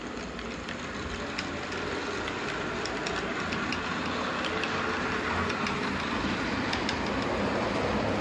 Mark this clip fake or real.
real